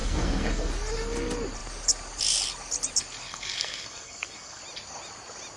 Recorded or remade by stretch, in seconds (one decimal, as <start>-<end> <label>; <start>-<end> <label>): 0.0-0.7 remade; 0.7-3.2 recorded; 3.2-4.6 remade; 4.6-5.6 recorded